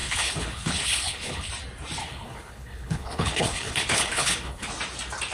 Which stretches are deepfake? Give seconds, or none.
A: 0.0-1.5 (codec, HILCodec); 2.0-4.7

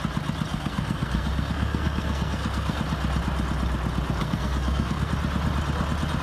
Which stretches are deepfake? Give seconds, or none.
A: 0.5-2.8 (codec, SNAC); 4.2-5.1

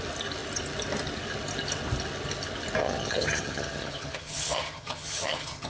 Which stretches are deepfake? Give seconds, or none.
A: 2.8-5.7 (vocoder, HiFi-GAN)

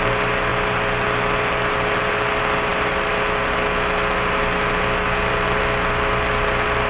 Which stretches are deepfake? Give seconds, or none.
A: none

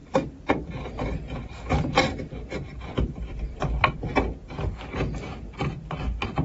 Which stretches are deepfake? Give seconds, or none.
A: 0.0-3.6 (vocoder, BigVGAN v2)

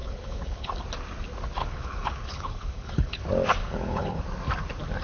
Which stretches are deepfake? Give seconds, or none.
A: 0.0-0.8 (codec, HILCodec); 1.6-3.2; 3.6-4.2